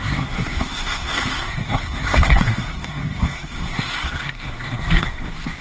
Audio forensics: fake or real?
fake